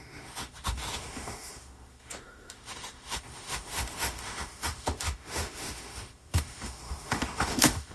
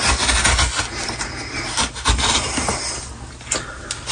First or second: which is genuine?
second